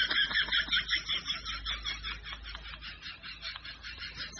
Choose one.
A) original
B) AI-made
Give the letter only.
A